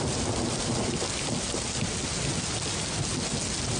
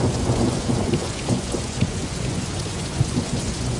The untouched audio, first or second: first